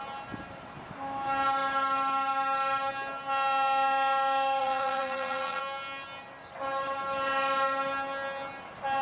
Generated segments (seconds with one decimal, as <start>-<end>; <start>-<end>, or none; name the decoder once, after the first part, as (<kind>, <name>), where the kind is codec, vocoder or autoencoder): 4.6-5.6 (vocoder, BigVGAN v2)